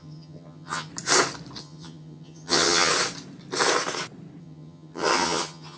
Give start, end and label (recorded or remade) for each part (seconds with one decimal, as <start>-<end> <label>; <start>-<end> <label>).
0.0-0.9 remade; 0.9-1.6 recorded; 1.6-2.9 remade; 2.9-4.4 recorded; 4.4-5.8 remade